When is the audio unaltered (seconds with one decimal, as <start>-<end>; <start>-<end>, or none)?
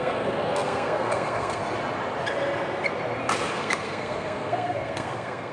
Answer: 1.6-3.5